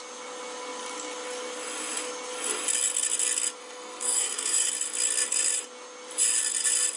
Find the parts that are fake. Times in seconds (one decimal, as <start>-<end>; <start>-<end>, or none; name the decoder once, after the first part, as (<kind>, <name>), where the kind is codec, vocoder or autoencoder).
3.6-4.7 (codec, SNAC)